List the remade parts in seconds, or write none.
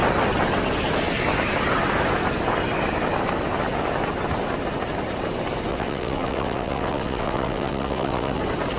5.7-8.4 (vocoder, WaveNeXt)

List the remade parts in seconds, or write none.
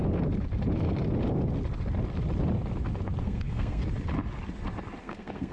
3.2-3.8 (codec, SNAC); 5.0-5.5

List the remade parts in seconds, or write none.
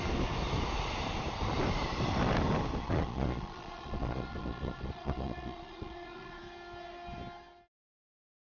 2.8-6.4 (vocoder, Vocos)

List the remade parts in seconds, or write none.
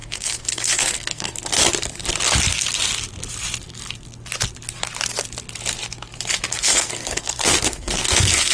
0.0-1.6 (codec, SNAC); 6.5-8.5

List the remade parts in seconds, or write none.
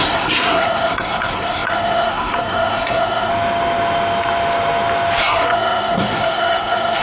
0.0-3.3 (codec, SNAC); 5.2-7.0